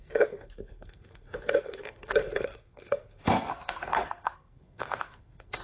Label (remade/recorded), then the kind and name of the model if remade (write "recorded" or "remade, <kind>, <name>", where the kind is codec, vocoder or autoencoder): remade, codec, SNAC